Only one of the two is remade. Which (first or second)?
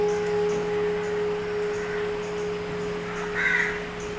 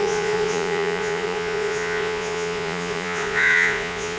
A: second